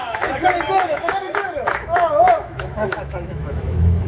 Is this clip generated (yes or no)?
yes